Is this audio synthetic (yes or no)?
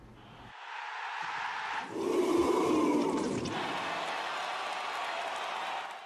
no